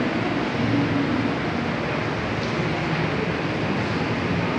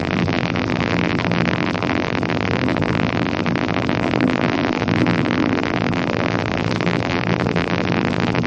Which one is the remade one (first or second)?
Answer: second